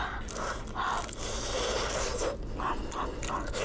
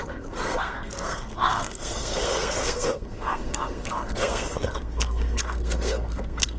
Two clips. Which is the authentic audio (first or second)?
first